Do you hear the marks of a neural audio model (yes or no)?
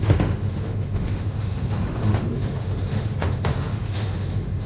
yes